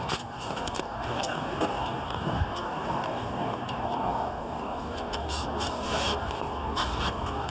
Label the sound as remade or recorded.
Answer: remade